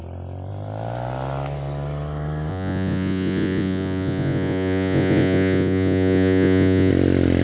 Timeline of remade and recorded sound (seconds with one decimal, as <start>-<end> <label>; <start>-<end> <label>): 0.0-2.5 recorded; 2.5-6.9 remade; 6.9-7.4 recorded